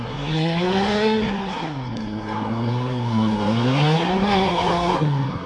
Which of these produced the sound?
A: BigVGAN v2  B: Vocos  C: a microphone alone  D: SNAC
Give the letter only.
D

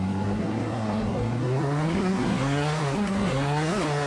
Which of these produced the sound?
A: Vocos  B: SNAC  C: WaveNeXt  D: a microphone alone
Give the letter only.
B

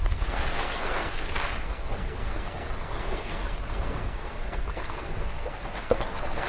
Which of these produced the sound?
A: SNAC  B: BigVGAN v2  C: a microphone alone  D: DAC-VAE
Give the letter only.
A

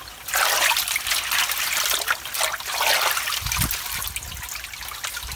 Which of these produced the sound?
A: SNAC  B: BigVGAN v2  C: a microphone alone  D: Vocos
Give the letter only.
C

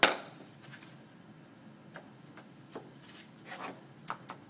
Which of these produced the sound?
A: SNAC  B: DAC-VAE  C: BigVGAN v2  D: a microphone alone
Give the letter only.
D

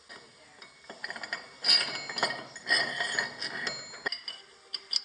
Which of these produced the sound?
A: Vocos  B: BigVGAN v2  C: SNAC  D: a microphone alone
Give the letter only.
D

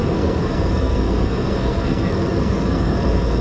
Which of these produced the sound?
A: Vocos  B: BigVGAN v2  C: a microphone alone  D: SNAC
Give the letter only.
D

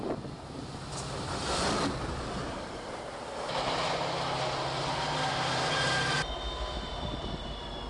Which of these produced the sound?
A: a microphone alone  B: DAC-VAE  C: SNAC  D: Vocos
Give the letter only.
A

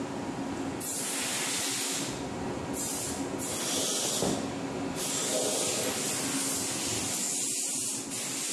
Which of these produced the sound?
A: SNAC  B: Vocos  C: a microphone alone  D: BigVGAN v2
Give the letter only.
C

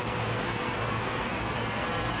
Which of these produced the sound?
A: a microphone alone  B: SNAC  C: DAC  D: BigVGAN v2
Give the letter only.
B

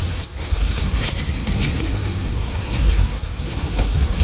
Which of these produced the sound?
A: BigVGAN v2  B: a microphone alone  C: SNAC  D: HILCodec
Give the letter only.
C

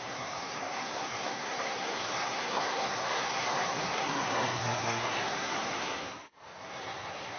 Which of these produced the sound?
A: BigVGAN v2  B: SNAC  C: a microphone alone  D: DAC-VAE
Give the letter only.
B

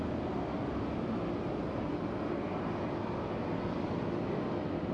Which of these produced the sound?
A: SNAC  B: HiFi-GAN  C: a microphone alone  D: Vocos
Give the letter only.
C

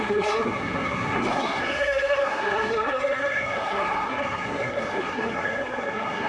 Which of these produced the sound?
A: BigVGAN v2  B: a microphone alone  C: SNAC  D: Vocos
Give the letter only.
C